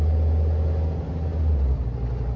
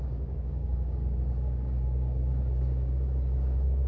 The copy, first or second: second